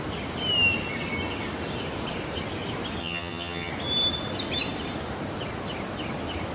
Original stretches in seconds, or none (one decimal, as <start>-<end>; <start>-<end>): 0.0-3.0; 3.7-6.5